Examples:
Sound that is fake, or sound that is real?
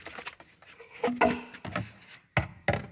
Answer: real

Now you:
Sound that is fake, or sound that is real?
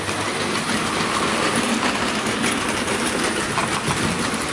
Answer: real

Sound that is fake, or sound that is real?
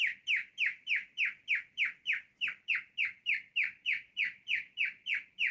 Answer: real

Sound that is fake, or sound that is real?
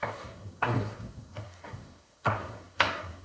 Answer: fake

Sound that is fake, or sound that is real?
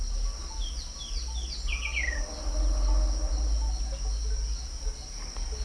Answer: real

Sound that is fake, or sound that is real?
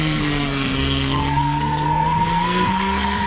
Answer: fake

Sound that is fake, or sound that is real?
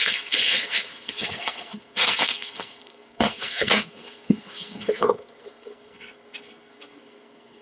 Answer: fake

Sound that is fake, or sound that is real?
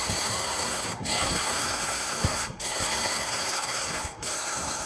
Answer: fake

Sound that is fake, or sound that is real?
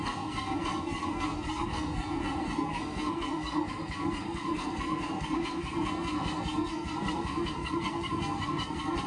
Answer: fake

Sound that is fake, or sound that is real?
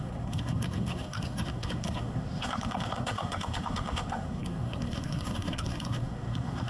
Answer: fake